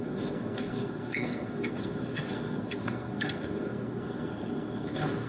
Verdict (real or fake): fake